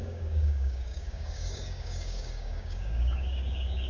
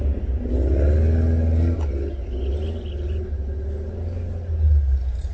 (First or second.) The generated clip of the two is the first